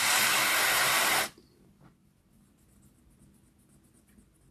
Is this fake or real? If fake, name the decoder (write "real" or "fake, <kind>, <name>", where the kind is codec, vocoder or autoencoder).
real